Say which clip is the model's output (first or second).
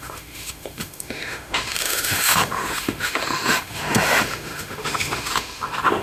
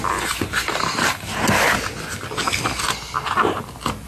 first